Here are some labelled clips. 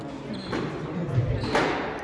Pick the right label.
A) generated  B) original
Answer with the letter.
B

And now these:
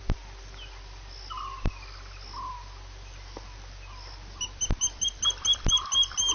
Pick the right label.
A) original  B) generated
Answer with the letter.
A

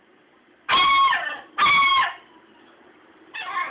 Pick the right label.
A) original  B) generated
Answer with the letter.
A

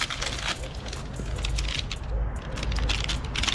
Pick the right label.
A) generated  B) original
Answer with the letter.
B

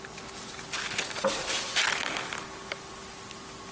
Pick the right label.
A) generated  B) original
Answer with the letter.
B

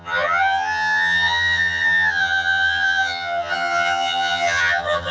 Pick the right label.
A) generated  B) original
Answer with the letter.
A